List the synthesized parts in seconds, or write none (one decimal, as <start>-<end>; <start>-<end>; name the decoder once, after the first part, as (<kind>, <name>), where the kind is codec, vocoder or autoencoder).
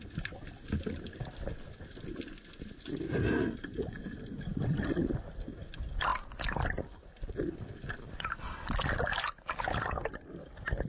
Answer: 3.2-4.0 (vocoder, Vocos)